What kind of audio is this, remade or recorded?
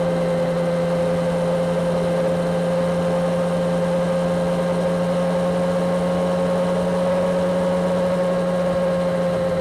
recorded